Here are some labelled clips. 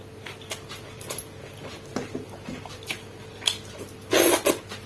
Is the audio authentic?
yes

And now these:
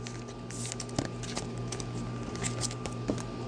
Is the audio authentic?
yes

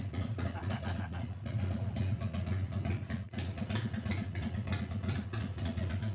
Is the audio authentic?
no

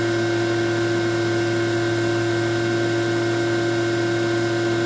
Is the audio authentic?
yes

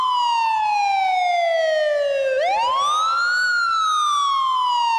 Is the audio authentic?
yes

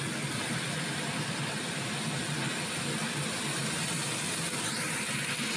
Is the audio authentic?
yes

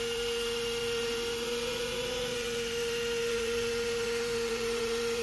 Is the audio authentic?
no